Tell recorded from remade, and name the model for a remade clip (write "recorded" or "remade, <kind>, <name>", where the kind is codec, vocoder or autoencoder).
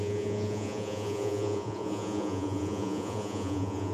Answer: remade, vocoder, Vocos